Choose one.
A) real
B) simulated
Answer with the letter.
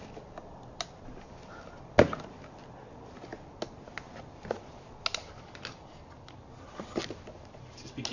A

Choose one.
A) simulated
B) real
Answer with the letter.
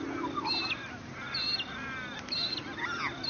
B